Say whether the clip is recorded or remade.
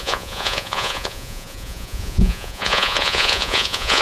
remade